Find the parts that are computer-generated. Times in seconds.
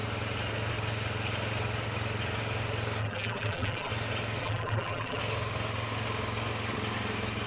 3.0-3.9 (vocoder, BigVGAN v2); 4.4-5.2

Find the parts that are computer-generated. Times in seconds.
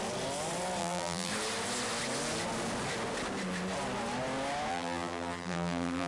0.8-1.3 (vocoder, BigVGAN v2); 4.7-6.1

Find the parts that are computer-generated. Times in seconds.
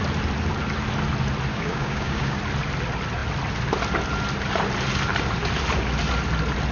1.5-2.4 (codec, DAC)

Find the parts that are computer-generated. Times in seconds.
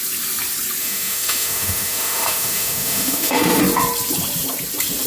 0.8-3.6 (autoencoder, DAC-VAE)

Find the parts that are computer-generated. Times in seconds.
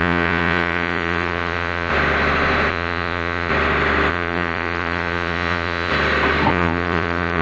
0.0-1.9 (vocoder, Vocos); 2.7-3.5; 4.1-5.9; 6.5-7.4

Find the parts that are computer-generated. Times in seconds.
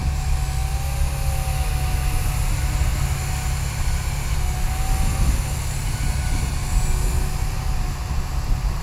none